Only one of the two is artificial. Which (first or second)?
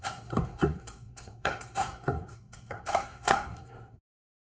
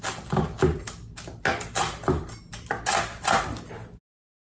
first